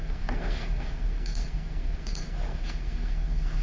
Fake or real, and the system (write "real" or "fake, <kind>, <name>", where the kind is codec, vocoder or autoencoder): fake, codec, SNAC